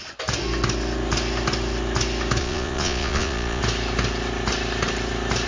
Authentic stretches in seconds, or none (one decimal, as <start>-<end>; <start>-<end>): 0.0-2.4; 3.6-5.5